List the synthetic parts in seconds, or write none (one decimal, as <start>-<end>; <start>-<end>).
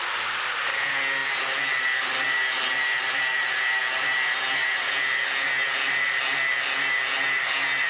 1.2-3.8